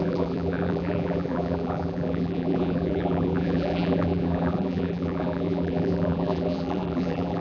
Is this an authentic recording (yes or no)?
no